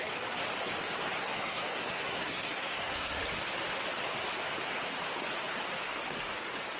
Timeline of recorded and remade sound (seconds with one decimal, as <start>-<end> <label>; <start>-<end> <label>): 0.0-1.2 recorded; 1.2-3.2 remade; 3.2-6.8 recorded